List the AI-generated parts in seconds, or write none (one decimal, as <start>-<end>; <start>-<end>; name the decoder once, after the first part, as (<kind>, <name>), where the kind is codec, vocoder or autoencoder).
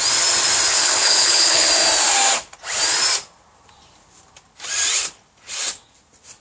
0.7-1.7 (codec, HILCodec)